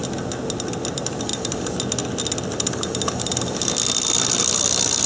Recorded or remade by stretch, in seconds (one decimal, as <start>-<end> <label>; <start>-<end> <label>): 0.0-0.9 recorded; 0.9-1.3 remade; 1.3-4.4 recorded; 4.4-5.1 remade